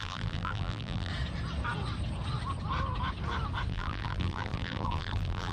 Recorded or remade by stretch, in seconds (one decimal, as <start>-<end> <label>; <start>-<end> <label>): 0.0-1.1 remade; 1.1-3.7 recorded; 3.7-5.5 remade